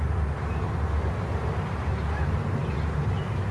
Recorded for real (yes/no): yes